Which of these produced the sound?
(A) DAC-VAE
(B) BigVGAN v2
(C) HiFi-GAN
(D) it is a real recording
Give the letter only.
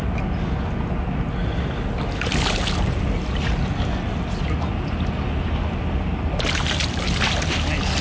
D